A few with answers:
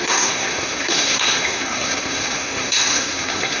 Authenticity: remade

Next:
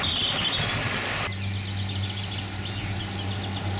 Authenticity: recorded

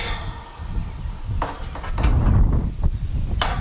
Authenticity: recorded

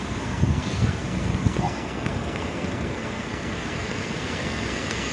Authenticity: remade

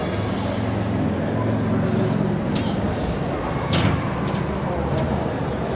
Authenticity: recorded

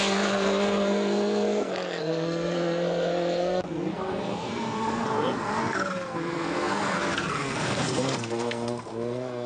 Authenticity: remade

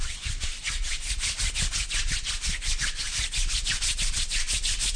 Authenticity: recorded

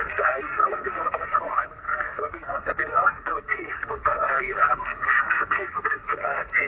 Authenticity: remade